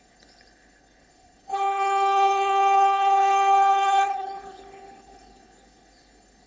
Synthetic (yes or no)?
yes